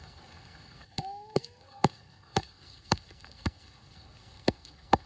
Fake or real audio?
fake